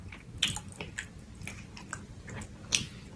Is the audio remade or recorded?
recorded